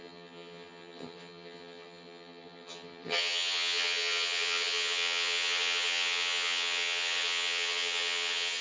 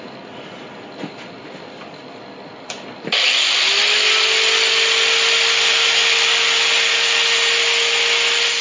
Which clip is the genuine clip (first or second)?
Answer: second